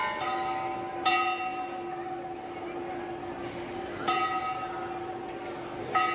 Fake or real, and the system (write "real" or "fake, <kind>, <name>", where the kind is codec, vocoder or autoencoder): real